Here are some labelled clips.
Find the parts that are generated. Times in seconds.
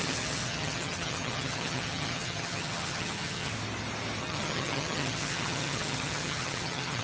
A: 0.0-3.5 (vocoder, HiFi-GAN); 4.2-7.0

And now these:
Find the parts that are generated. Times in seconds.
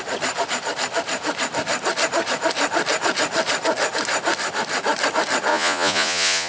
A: 5.5-6.5 (vocoder, Vocos)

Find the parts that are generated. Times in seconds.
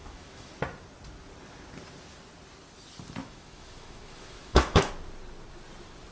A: 0.0-0.5 (autoencoder, DAC-VAE); 3.2-4.9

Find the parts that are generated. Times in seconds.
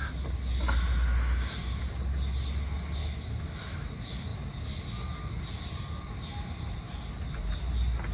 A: 3.0-3.9 (autoencoder, DAC-VAE)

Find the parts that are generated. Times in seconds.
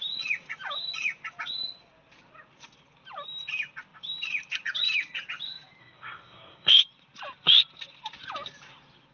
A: 5.8-6.8 (codec, SNAC)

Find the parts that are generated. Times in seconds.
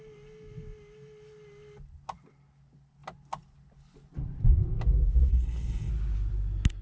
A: 5.3-5.9 (codec, HILCodec)